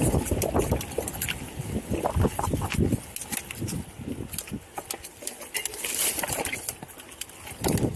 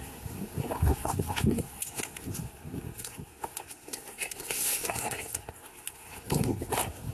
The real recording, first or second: first